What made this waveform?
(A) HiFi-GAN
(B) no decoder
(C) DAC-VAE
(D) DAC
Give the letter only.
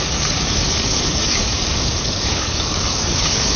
D